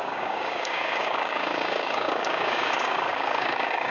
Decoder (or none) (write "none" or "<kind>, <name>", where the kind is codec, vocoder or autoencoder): codec, DAC